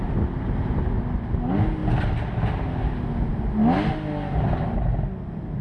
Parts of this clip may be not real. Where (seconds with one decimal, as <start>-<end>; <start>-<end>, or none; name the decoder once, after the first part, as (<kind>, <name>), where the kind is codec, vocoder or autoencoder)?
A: none